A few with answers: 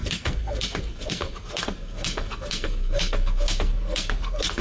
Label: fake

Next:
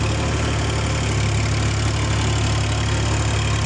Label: real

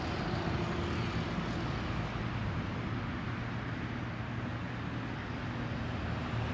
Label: real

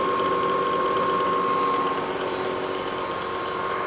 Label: real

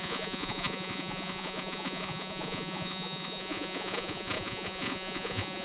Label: fake